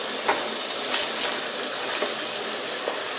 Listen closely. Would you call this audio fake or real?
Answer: real